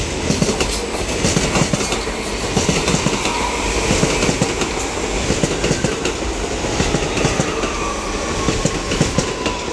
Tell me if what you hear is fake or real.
real